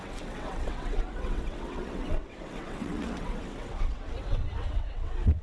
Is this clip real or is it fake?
fake